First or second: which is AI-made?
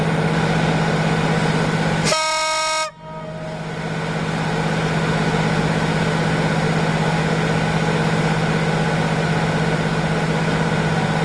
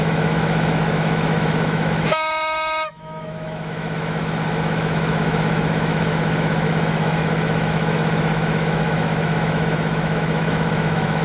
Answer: second